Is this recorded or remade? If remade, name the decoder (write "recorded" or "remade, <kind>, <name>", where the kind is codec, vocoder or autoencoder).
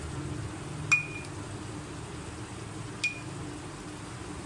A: recorded